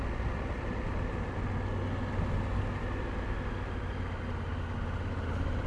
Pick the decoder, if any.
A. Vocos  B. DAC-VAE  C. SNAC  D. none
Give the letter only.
D